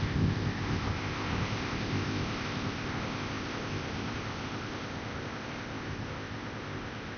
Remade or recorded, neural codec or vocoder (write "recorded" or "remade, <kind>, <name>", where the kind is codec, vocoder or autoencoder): remade, codec, ZipCodec